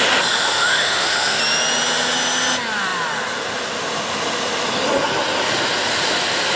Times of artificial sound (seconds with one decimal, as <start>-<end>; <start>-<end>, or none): 0.4-1.4

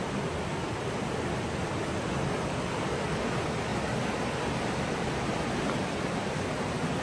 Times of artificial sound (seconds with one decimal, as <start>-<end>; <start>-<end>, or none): none

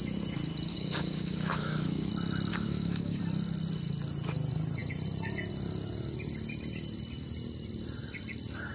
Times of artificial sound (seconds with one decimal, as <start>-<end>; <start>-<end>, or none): 0.7-2.1; 2.5-3.2

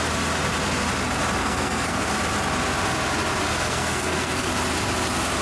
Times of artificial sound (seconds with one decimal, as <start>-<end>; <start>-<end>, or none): 1.4-2.1; 3.5-4.5

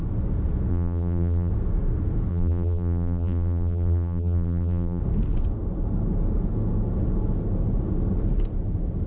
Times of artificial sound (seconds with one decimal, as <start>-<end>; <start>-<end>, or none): 0.7-1.5; 2.3-5.0

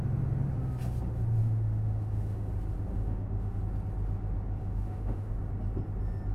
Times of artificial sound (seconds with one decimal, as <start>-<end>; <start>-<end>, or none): 1.4-2.5; 2.9-3.6; 4.6-5.3